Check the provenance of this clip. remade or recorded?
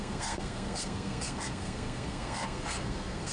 remade